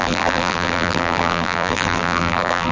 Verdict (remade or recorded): remade